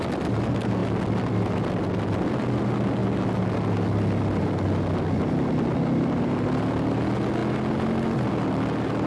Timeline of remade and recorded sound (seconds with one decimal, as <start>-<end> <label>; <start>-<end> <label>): 0.0-9.1 recorded